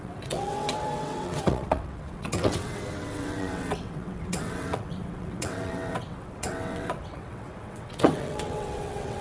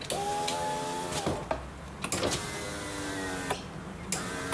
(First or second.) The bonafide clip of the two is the second